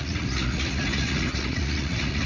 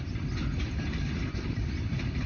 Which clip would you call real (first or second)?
second